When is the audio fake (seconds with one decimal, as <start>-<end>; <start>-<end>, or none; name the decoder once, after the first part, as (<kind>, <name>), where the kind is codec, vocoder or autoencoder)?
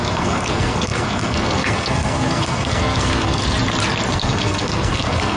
0.0-3.4 (codec, SNAC); 4.1-5.4